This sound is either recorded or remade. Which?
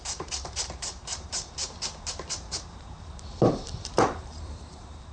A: remade